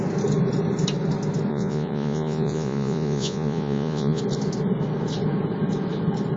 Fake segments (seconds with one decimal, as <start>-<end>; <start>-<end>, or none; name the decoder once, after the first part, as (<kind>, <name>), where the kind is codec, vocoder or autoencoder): 1.5-4.2 (vocoder, Vocos)